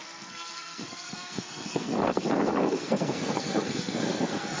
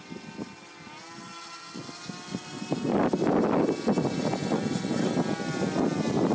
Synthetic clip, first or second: first